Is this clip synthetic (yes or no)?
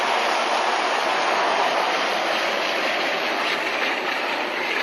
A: yes